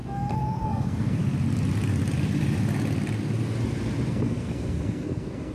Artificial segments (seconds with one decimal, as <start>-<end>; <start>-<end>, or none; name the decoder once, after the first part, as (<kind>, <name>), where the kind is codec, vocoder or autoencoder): 0.0-1.2 (codec, SNAC); 4.1-5.5